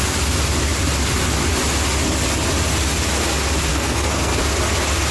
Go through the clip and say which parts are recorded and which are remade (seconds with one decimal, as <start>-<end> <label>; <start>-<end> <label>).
0.0-3.7 recorded; 3.7-4.4 remade; 4.4-5.1 recorded